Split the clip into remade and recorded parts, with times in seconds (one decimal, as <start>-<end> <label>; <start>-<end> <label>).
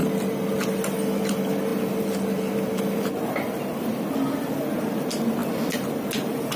0.0-1.7 remade; 1.7-2.8 recorded; 2.8-6.6 remade